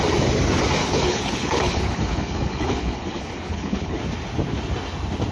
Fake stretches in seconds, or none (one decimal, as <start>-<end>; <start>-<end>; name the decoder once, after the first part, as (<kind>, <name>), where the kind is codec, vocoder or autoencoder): 0.8-4.0 (codec, HILCodec)